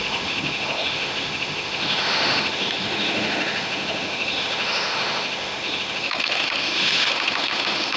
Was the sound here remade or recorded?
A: remade